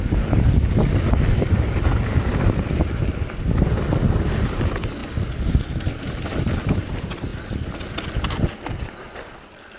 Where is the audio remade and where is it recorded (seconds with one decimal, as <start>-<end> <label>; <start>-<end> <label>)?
0.0-9.8 recorded